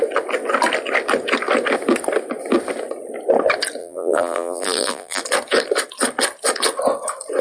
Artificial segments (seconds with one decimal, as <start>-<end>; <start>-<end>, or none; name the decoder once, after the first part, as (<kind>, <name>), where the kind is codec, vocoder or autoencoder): 3.8-5.2 (vocoder, BigVGAN v2)